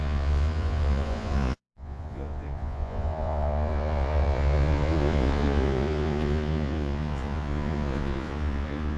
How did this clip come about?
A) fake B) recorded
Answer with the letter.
A